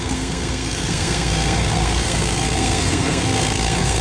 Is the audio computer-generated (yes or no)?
yes